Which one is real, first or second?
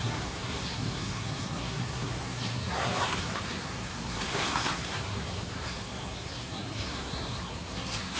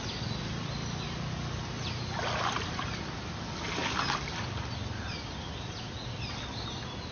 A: second